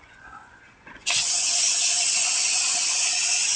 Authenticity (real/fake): fake